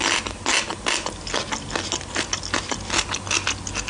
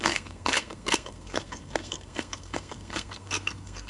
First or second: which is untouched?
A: first